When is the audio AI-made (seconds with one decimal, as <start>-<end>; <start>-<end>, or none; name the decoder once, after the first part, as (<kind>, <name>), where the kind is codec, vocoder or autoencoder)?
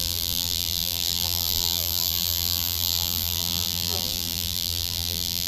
0.0-5.5 (vocoder, BigVGAN v2)